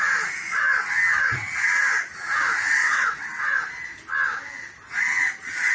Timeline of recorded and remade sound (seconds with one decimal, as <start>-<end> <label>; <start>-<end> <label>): 0.0-2.8 recorded; 2.8-3.4 remade; 3.4-5.7 recorded